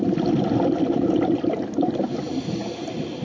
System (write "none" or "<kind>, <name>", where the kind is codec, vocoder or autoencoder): none